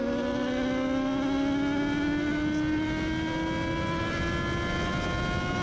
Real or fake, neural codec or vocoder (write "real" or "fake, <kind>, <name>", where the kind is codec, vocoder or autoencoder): real